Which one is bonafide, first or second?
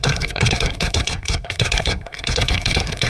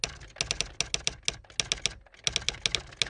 second